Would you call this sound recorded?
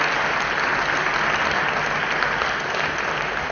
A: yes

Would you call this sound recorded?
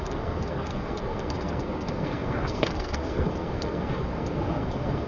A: no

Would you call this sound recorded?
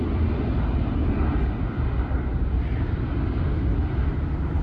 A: yes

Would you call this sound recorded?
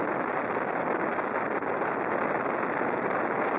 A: yes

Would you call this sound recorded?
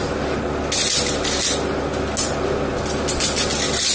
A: yes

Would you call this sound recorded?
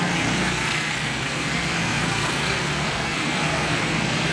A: no